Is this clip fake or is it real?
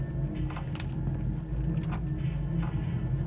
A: real